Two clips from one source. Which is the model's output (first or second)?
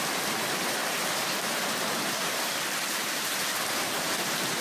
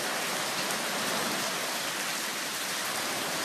first